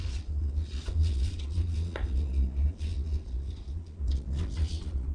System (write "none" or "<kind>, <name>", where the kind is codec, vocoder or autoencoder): vocoder, Vocos